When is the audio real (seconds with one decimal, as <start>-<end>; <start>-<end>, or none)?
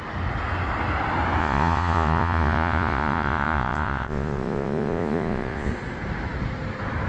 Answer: 0.0-1.4; 5.7-7.1